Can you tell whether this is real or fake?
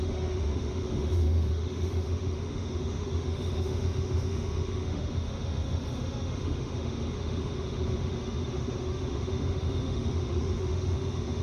fake